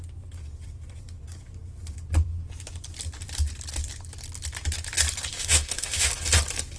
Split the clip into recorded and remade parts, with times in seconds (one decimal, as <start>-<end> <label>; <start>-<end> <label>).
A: 0.0-5.3 recorded; 5.3-6.1 remade; 6.1-6.8 recorded